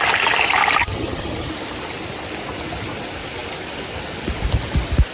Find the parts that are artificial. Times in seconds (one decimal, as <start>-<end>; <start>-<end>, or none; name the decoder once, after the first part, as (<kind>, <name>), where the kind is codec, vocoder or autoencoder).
0.8-1.5 (vocoder, HiFi-GAN)

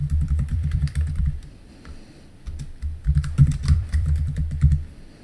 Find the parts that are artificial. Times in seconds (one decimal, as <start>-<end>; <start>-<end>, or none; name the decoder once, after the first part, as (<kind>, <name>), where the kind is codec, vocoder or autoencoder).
0.0-1.2 (vocoder, BigVGAN v2); 3.4-4.4

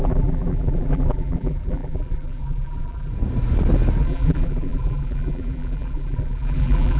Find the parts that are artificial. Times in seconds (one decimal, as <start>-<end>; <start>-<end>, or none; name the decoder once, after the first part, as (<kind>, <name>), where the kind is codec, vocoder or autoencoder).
0.0-3.1 (vocoder, BigVGAN v2); 4.0-7.0

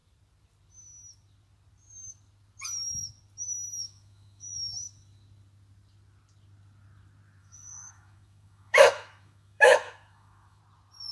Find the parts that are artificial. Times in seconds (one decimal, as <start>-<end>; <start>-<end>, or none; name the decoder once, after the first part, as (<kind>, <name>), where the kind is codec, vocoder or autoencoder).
3.8-4.7 (autoencoder, DAC-VAE); 7.4-10.6

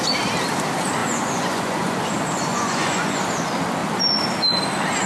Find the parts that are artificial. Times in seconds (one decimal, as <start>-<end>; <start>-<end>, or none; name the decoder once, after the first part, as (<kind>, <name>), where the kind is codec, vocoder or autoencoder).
1.0-2.0 (vocoder, Vocos); 2.5-3.2

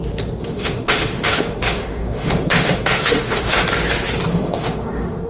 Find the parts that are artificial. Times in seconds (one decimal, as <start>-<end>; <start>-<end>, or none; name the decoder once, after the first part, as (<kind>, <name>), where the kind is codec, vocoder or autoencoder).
0.4-3.6 (autoencoder, DAC-VAE); 4.3-5.3

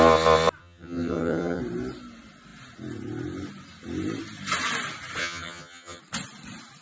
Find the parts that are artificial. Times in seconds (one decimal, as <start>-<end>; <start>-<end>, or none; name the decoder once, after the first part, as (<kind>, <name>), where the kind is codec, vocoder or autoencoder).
0.6-1.6 (vocoder, HiFi-GAN); 5.2-6.0

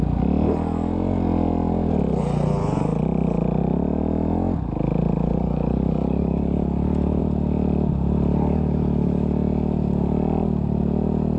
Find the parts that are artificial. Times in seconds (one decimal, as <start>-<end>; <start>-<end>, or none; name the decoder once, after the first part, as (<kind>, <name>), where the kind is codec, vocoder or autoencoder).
5.2-7.2 (codec, DAC); 8.3-9.3